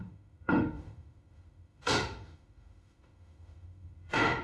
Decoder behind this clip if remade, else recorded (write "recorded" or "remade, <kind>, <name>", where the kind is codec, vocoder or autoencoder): remade, autoencoder, DAC-VAE